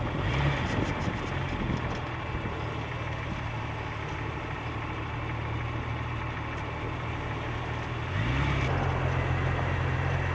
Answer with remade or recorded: recorded